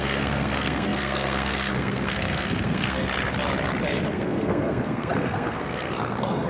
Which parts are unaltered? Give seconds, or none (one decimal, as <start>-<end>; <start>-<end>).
3.0-4.1